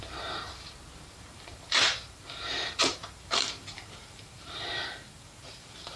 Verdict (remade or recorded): remade